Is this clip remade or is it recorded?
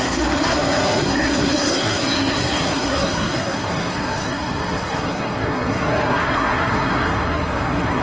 remade